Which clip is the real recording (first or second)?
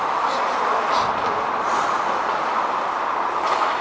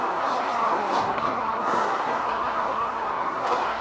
first